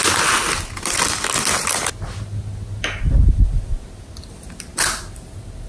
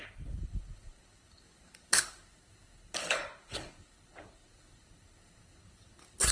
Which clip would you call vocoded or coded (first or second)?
second